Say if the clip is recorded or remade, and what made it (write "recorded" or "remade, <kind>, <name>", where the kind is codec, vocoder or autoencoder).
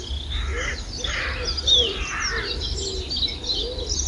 recorded